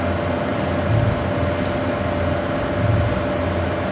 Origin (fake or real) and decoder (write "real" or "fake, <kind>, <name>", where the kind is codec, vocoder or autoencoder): real